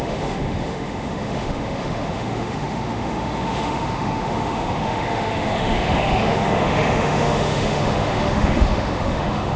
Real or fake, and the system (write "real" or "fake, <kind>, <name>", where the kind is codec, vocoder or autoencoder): fake, autoencoder, DAC-VAE